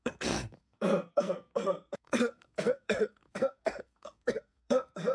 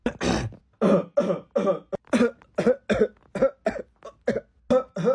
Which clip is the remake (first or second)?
first